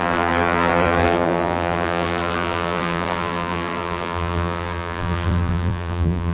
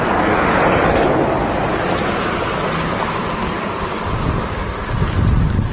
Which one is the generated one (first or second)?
first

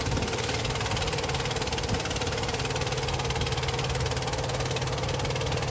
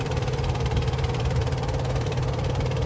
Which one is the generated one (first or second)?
second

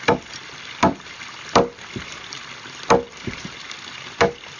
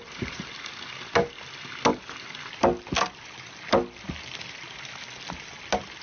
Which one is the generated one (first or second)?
first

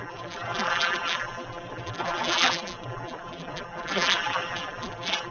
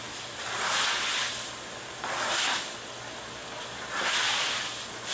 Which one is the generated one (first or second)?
first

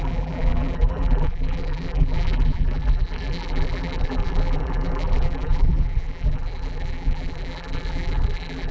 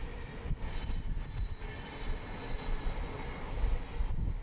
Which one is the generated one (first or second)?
first